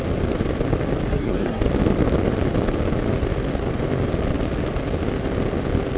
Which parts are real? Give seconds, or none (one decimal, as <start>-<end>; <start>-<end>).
0.0-1.1; 1.6-6.0